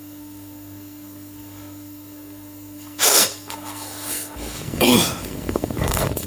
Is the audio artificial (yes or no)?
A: yes